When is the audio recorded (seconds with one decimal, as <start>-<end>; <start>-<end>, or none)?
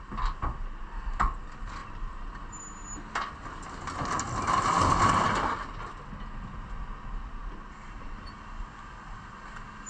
0.0-9.9